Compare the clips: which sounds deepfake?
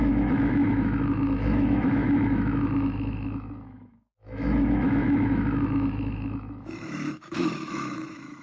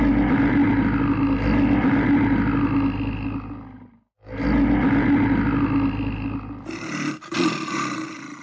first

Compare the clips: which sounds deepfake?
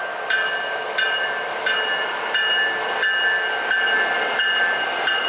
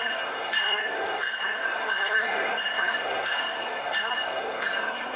second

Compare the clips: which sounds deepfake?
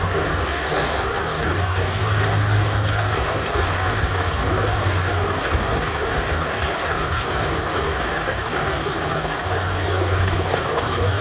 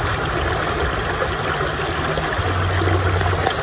first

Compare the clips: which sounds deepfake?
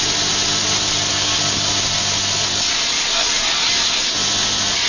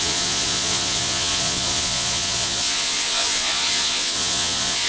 second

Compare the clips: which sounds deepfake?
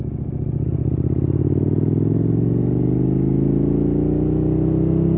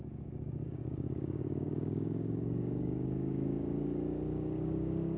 second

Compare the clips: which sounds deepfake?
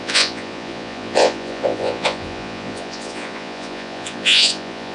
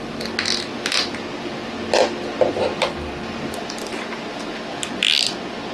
first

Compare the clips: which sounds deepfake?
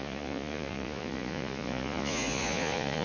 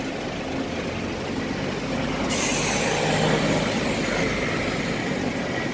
first